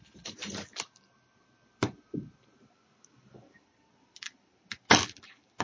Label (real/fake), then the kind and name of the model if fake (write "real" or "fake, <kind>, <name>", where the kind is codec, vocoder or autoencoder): fake, vocoder, BigVGAN v2